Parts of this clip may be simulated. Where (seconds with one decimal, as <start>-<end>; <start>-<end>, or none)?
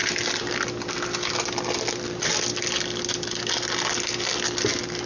none